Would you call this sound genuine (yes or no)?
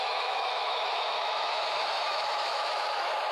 no